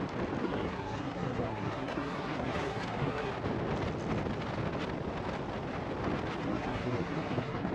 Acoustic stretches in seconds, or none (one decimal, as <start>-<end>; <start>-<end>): 0.0-0.4; 3.3-6.4